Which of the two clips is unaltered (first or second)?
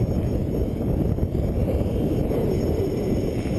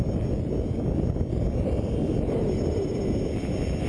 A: second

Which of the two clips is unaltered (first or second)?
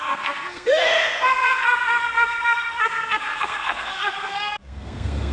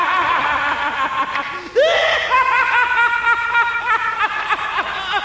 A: second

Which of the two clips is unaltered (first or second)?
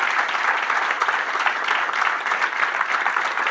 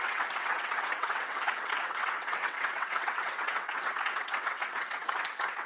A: first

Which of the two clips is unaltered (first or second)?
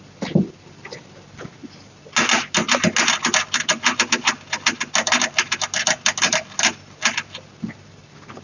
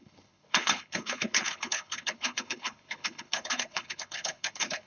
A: first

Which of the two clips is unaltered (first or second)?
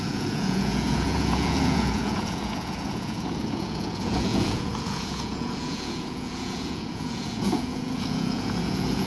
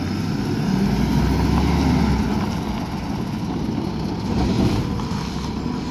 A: second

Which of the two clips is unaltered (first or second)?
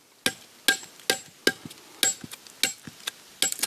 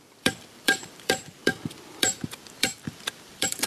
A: first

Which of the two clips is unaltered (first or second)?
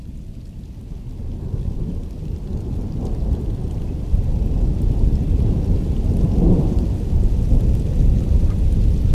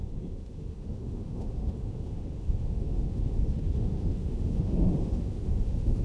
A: first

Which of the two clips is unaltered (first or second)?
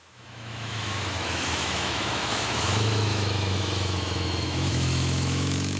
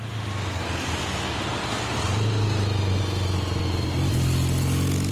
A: second